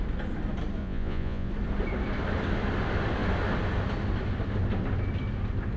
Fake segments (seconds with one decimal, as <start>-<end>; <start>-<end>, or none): 0.8-1.5